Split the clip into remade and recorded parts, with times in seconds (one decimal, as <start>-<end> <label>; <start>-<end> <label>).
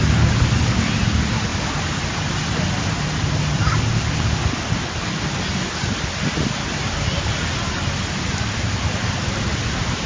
0.0-10.1 recorded